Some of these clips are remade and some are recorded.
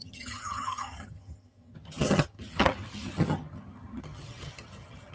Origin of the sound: remade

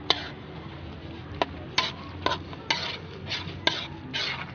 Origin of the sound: recorded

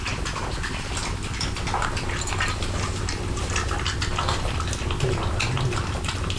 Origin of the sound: recorded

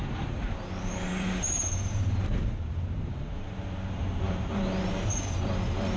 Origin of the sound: remade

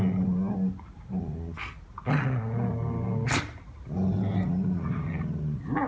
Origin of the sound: recorded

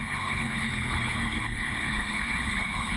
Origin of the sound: remade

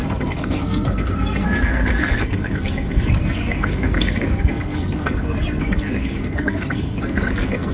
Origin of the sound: remade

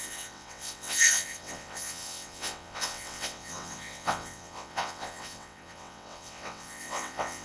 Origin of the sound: remade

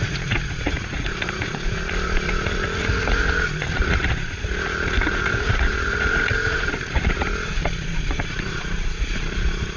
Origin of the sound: remade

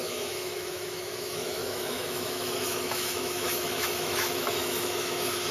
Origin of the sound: remade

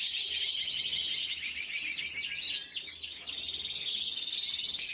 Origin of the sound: recorded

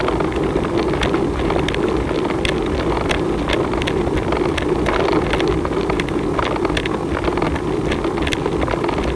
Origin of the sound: recorded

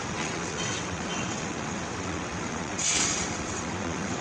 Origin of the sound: remade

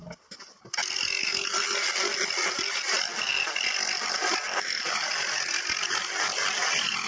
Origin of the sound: recorded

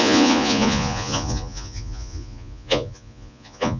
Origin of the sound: remade